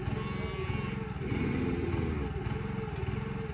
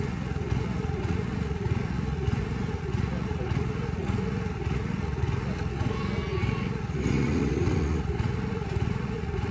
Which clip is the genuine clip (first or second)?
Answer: first